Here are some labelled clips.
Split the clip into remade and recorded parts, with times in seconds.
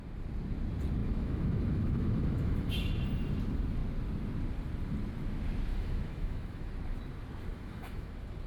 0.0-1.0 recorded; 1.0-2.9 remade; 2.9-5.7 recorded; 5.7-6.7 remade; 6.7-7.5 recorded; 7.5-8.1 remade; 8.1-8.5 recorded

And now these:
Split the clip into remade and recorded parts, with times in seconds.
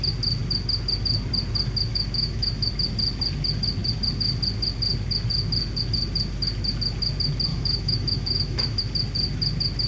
0.0-1.9 recorded; 1.9-2.7 remade; 2.7-7.5 recorded; 7.5-8.8 remade; 8.8-9.9 recorded